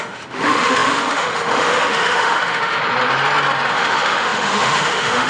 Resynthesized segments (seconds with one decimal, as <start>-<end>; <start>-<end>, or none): 0.0-2.8; 3.7-5.3